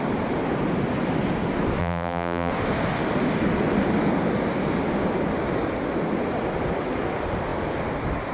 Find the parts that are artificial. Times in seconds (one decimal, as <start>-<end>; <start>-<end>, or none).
1.8-2.5